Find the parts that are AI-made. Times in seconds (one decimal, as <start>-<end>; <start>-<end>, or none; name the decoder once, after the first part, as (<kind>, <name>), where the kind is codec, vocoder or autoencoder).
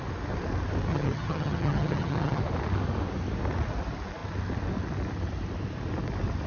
0.9-2.4 (vocoder, HiFi-GAN)